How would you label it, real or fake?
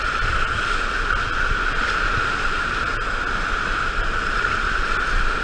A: real